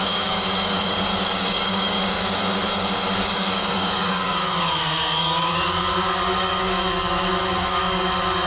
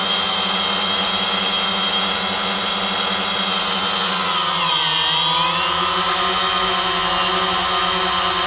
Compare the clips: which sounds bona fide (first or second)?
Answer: second